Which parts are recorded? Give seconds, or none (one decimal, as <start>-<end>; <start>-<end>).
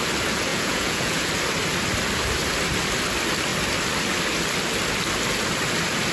0.0-0.5; 1.3-6.1